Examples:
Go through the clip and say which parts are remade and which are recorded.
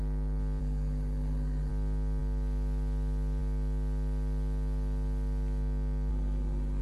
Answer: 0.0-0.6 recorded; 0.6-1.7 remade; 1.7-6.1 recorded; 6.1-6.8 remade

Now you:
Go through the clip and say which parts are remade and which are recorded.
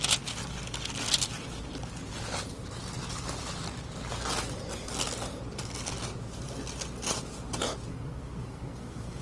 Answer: 0.0-7.9 recorded; 7.9-9.2 remade